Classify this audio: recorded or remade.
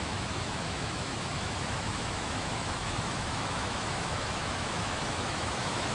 remade